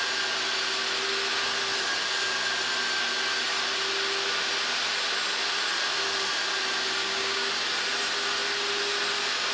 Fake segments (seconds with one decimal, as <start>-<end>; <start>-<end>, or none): 7.0-7.5